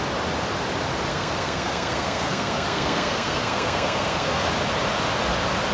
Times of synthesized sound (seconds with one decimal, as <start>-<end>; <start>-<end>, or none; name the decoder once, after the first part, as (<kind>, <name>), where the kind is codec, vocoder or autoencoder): 1.1-4.5 (codec, SNAC)